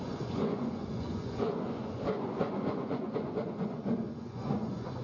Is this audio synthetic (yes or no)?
yes